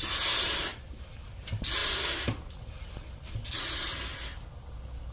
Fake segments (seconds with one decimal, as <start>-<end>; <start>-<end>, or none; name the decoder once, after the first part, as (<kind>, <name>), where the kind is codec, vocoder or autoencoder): none